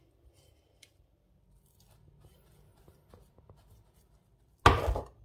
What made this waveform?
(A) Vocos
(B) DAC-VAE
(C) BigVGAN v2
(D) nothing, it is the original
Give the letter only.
D